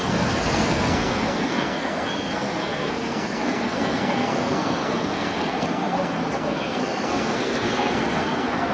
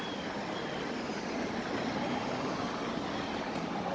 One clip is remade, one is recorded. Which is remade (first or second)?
first